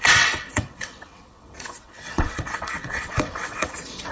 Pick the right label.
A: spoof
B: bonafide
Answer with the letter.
A